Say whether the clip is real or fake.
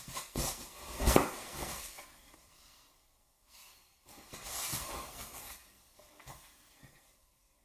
fake